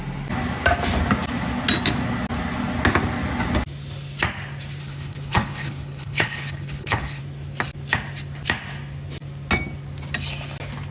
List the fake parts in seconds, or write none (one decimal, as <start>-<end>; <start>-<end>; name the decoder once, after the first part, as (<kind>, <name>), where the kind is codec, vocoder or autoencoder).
4.8-7.2 (codec, HILCodec)